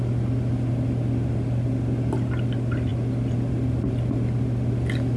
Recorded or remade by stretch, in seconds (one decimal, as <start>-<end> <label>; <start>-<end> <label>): 0.0-5.2 recorded